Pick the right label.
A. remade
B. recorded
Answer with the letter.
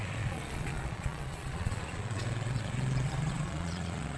A